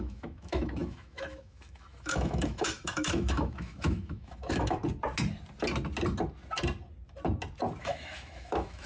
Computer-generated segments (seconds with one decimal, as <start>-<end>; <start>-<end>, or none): 0.0-4.8; 7.8-8.9